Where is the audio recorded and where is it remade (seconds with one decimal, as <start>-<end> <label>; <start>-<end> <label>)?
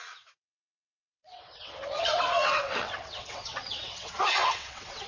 0.0-5.1 remade